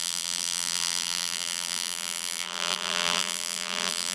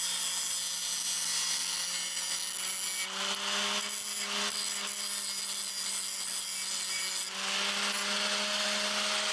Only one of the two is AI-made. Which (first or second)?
first